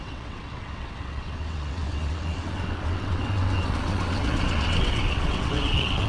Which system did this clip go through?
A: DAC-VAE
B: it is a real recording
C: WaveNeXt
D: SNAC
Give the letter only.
C